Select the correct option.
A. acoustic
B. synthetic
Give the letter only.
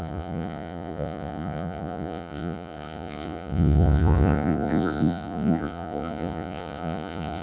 B